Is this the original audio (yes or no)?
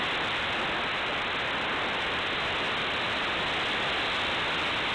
yes